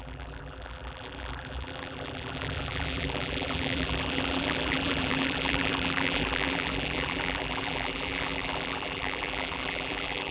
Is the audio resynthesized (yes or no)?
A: yes